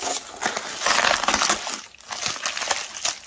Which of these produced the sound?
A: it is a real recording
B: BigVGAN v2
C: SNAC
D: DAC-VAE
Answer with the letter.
A